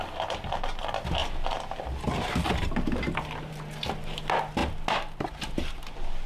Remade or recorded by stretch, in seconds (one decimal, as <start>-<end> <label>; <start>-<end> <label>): 0.0-6.3 recorded